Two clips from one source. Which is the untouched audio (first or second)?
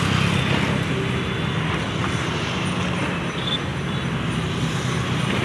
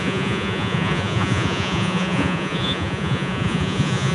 first